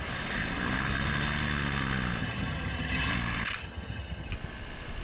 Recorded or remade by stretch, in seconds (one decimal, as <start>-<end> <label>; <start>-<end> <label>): 0.0-2.2 recorded; 2.2-3.1 remade; 3.1-3.6 recorded; 3.6-4.3 remade; 4.3-5.0 recorded